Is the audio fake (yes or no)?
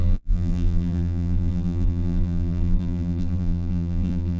yes